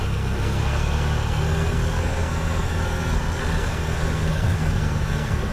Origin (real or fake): fake